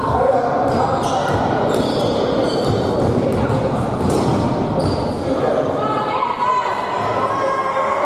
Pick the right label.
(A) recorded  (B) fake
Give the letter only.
A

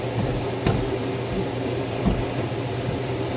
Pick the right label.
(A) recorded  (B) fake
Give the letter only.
B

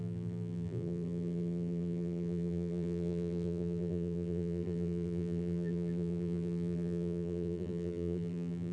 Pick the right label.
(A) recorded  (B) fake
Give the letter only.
B